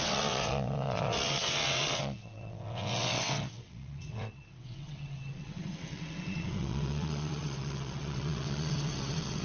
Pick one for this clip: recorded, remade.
remade